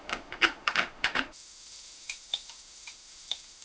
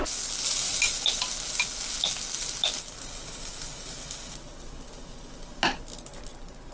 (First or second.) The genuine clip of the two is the second